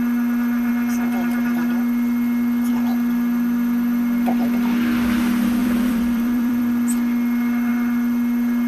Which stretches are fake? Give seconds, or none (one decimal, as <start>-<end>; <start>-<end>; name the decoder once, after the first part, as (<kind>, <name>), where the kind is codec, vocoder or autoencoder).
5.6-6.6 (vocoder, BigVGAN v2)